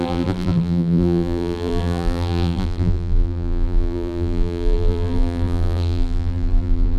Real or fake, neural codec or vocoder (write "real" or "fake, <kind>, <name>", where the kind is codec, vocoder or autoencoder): fake, vocoder, BigVGAN v2